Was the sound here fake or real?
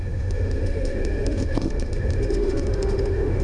fake